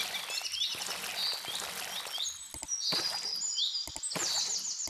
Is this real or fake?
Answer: real